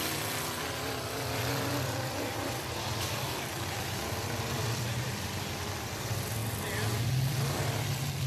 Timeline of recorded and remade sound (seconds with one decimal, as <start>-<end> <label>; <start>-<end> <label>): 0.0-6.4 remade; 6.4-7.1 recorded; 7.1-8.3 remade